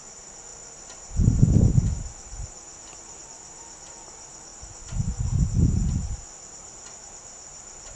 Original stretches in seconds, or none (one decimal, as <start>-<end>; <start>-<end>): 0.0-0.5; 1.4-8.0